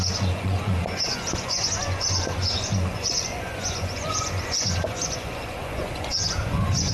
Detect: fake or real fake